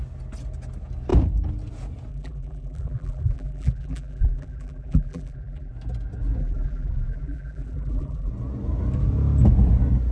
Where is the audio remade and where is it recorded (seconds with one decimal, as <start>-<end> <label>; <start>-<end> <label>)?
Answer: 0.0-2.1 recorded; 2.1-5.7 remade; 5.7-6.4 recorded; 6.4-8.3 remade; 8.3-10.1 recorded